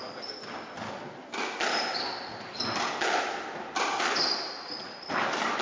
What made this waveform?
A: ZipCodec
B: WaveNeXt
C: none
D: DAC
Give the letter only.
C